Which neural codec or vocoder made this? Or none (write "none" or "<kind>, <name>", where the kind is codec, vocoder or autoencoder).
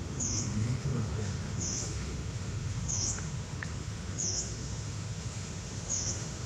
autoencoder, DAC-VAE